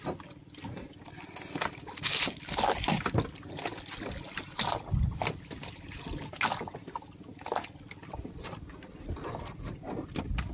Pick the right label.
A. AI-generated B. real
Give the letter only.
B